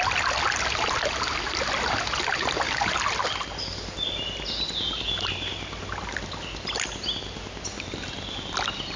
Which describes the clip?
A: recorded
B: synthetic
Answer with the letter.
A